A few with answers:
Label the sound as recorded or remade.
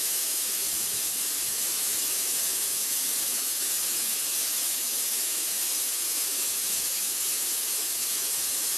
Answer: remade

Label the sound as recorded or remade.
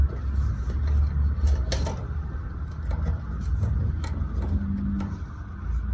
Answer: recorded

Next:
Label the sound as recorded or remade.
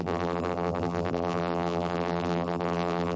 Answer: remade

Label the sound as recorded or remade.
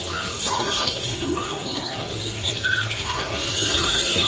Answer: remade